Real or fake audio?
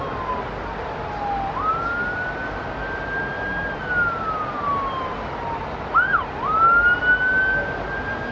real